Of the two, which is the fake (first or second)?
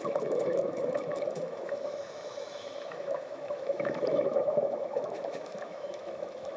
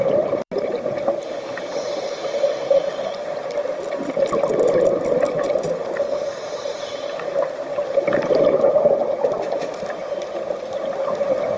first